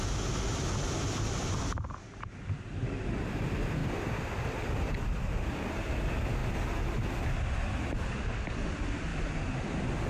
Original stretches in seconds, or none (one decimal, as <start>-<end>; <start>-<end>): 0.0-3.8; 5.5-6.4; 7.3-10.1